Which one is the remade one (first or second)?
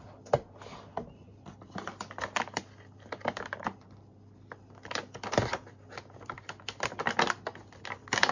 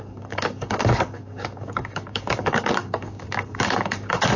second